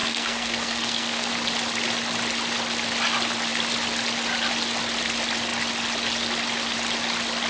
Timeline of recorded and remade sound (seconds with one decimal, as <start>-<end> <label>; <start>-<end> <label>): 0.0-1.3 remade; 1.3-7.5 recorded